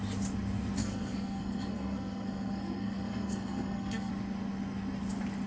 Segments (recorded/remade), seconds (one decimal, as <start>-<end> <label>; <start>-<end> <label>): 0.0-0.8 recorded; 0.8-4.1 remade; 4.1-5.5 recorded